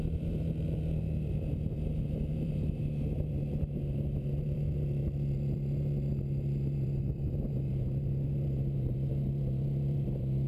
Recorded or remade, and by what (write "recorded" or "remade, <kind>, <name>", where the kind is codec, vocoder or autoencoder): remade, vocoder, BigVGAN v2